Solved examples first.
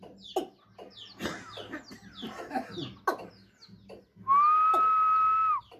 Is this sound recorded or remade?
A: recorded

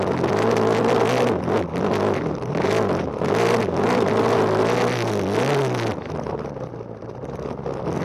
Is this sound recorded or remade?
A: recorded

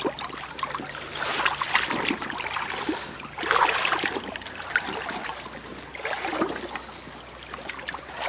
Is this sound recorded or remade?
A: recorded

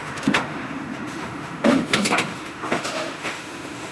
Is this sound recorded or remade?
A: remade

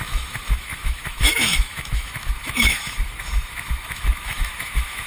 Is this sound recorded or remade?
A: remade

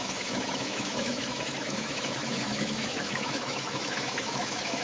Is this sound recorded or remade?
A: remade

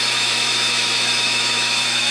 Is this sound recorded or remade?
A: remade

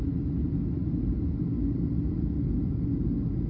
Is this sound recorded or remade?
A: recorded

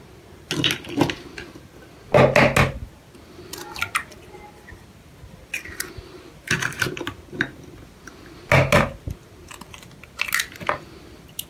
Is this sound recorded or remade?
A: recorded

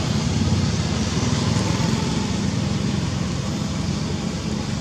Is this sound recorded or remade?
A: recorded